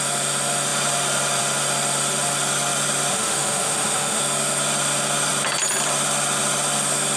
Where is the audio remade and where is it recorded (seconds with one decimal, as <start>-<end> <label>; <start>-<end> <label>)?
0.0-3.1 recorded; 3.1-4.2 remade; 4.2-7.2 recorded